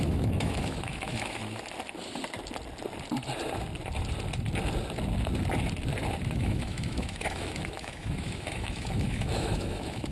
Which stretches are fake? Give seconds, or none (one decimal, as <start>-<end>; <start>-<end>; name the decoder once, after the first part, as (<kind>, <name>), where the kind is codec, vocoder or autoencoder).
0.0-1.4 (autoencoder, DAC-VAE); 6.3-10.1

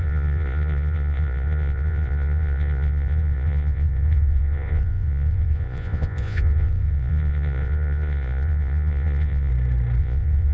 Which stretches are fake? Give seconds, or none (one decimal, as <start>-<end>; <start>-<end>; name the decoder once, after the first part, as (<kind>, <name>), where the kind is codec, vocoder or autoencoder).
0.0-9.5 (vocoder, Vocos); 10.0-10.5

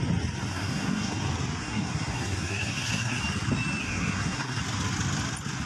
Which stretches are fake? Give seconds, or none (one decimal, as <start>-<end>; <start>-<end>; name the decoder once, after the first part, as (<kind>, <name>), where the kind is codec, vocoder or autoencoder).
0.5-1.2 (codec, SNAC); 1.6-3.2; 3.8-4.6

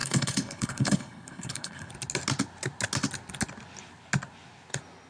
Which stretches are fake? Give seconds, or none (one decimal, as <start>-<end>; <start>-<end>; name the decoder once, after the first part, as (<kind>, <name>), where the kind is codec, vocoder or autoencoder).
0.0-1.9 (codec, HILCodec)